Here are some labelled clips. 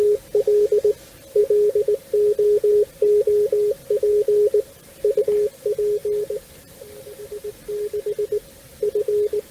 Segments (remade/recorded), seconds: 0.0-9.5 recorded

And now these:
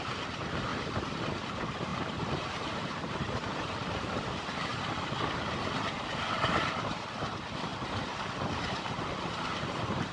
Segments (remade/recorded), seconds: 0.0-0.7 recorded; 0.7-1.2 remade; 1.2-1.9 recorded; 1.9-4.2 remade; 4.2-10.1 recorded